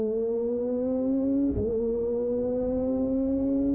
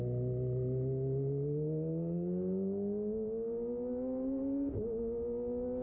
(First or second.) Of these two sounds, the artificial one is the first